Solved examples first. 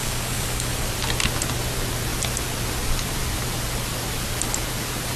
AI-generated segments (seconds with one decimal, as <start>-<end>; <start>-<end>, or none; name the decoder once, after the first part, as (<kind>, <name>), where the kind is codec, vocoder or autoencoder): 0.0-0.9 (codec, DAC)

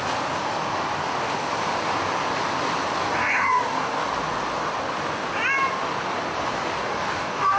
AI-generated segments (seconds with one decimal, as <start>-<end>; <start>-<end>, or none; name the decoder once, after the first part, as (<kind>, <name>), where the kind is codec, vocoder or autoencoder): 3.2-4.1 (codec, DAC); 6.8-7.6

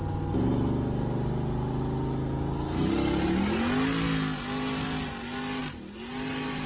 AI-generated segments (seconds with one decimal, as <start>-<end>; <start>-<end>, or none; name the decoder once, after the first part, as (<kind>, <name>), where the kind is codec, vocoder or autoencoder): none

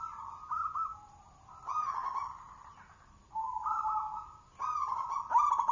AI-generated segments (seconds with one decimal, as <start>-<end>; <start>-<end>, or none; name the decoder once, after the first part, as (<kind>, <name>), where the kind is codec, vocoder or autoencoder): none

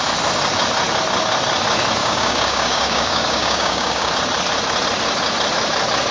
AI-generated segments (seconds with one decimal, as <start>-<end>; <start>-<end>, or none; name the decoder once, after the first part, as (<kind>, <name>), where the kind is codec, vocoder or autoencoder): 2.0-4.1 (codec, DAC)

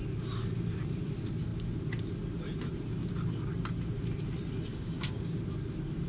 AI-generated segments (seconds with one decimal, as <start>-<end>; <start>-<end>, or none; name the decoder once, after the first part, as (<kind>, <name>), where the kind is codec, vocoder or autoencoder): 4.7-5.4 (codec, DAC)